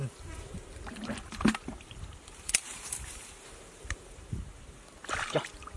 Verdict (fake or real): fake